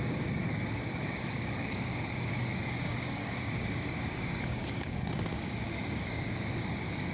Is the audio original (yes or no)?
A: no